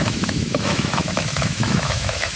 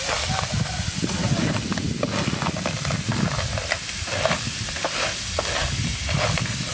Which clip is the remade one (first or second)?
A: first